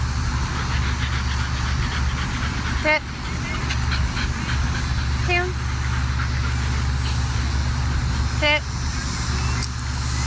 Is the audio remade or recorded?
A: recorded